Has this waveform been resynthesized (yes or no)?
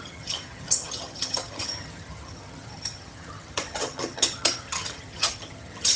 yes